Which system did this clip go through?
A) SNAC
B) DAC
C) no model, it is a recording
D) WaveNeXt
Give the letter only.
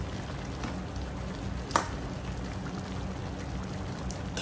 C